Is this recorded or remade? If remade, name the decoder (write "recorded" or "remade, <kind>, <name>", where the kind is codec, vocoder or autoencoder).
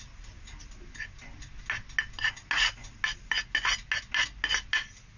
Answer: recorded